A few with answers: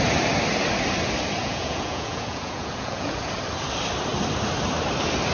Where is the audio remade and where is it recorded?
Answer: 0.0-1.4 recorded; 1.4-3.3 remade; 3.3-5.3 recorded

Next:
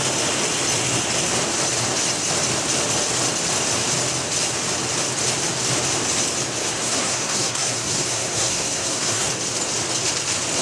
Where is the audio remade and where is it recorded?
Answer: 0.0-6.6 recorded; 6.6-9.3 remade; 9.3-10.6 recorded

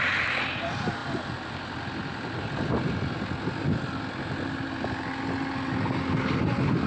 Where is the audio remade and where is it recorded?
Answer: 0.0-6.9 recorded